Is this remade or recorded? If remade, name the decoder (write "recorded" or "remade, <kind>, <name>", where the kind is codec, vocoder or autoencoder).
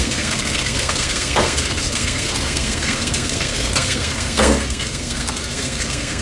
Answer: remade, codec, SNAC